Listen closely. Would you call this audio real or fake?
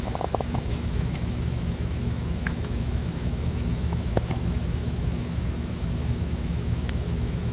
fake